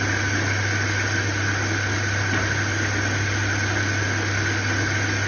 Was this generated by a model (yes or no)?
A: no